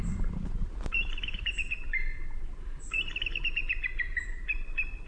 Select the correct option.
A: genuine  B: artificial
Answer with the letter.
A